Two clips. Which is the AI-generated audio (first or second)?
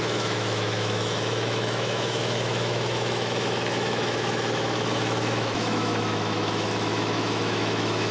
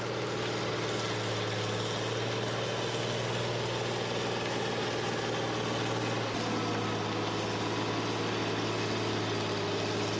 first